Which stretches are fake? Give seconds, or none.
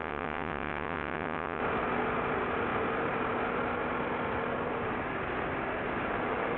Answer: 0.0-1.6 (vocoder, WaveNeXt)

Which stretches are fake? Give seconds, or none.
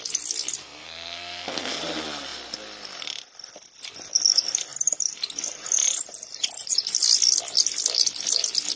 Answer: 0.6-1.8 (codec, SNAC)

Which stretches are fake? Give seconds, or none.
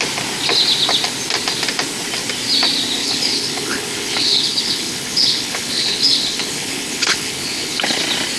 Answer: 3.0-8.0 (codec, HILCodec)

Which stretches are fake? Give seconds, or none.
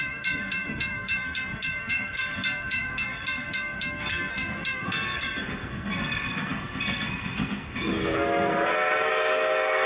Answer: 0.0-9.9 (codec, SNAC)